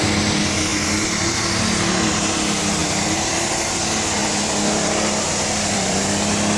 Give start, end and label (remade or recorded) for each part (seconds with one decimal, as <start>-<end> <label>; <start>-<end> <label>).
0.0-2.8 recorded; 2.8-3.7 remade; 3.7-4.2 recorded; 4.2-6.0 remade; 6.0-6.6 recorded